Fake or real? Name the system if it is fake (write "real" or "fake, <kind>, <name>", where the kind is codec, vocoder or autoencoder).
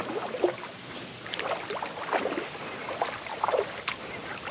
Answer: real